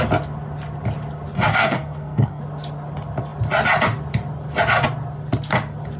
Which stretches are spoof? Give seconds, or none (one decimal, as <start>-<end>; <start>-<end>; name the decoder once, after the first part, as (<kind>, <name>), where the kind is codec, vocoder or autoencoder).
1.5-2.4 (codec, SNAC)